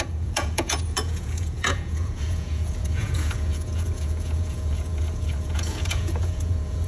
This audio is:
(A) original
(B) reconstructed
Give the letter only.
B